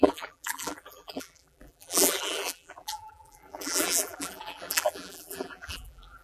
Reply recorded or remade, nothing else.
remade